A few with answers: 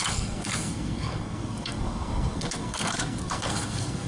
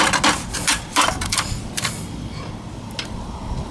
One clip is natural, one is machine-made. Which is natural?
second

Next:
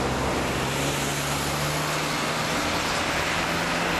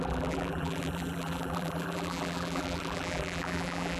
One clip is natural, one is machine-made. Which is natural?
first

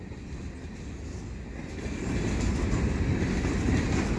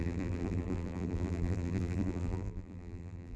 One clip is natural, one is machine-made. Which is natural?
first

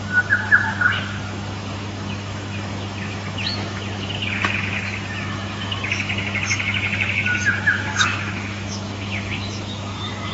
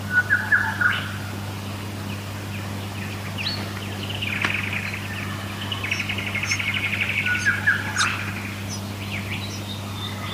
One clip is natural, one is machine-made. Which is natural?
second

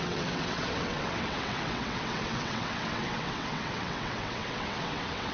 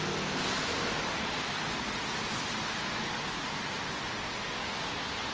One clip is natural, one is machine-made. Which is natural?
second